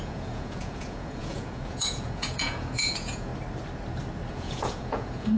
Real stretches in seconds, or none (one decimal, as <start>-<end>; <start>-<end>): 3.3-4.3